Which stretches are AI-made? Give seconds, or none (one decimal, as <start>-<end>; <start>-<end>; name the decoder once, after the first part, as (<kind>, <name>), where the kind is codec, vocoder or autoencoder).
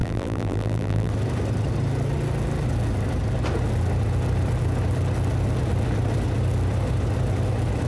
0.0-1.1 (vocoder, BigVGAN v2)